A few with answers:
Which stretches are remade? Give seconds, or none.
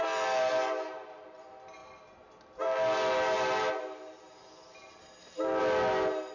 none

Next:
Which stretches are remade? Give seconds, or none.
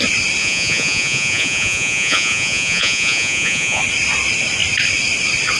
0.4-3.8 (vocoder, Vocos)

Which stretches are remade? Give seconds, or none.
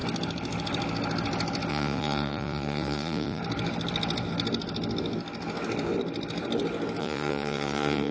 1.7-3.4 (vocoder, Vocos); 7.0-8.1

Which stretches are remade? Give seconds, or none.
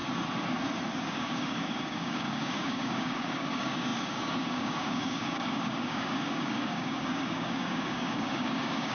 1.0-8.9 (codec, DAC)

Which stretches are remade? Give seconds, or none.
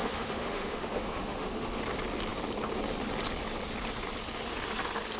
0.0-1.8 (autoencoder, DAC-VAE)